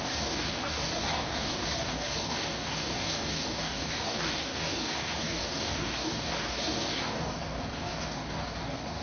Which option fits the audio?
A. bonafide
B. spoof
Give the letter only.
B